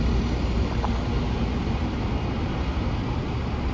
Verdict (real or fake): real